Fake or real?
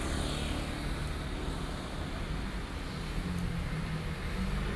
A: real